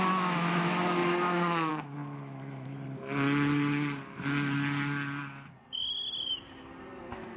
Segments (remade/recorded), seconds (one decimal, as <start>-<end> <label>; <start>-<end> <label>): 0.0-2.7 remade; 2.7-7.0 recorded; 7.0-7.4 remade